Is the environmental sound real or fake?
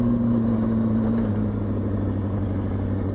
real